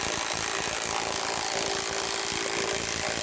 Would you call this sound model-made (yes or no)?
no